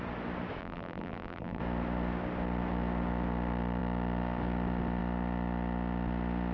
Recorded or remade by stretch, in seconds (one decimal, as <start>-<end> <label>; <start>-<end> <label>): 0.0-0.6 recorded; 0.6-1.6 remade; 1.6-6.5 recorded